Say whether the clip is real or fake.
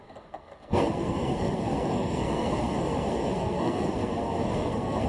fake